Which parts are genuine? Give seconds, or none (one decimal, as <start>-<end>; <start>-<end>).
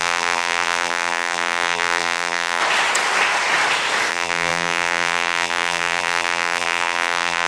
2.6-4.1